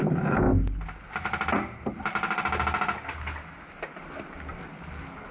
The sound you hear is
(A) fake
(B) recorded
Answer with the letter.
B